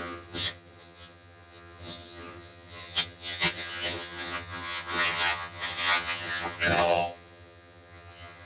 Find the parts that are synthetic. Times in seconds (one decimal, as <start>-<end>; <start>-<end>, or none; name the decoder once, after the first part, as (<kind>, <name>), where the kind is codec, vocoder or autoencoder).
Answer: 0.0-8.5 (vocoder, HiFi-GAN)